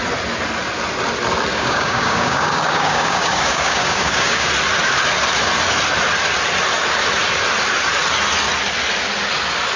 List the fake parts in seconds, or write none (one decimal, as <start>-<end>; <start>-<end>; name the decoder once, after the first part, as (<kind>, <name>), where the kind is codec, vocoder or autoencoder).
1.5-4.5 (codec, DAC)